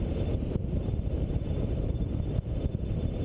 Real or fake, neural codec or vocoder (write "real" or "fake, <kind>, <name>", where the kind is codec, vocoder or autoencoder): fake, vocoder, BigVGAN v2